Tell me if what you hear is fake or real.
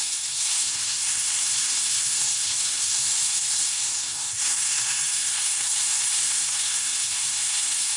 fake